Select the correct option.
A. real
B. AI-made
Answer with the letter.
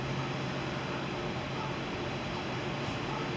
A